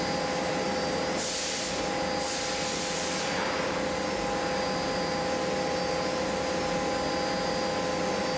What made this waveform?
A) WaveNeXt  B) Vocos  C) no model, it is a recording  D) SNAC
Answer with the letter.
C